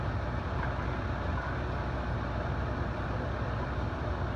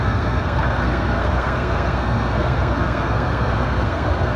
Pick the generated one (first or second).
second